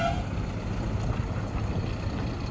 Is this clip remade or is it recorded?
recorded